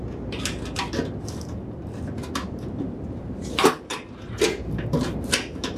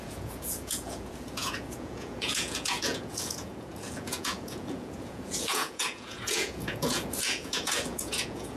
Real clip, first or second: first